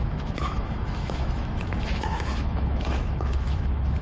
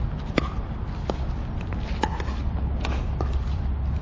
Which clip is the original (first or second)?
second